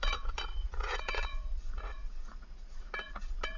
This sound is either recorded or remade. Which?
remade